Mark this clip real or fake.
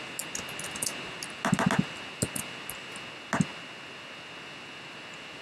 real